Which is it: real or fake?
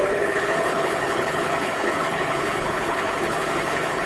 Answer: fake